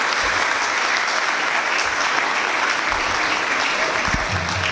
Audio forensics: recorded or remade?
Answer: recorded